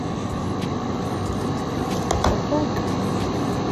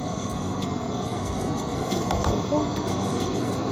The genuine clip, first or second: first